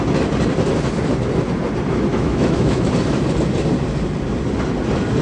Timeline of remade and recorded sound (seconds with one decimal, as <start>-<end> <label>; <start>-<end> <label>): 0.0-2.1 recorded; 2.1-2.9 remade; 2.9-5.2 recorded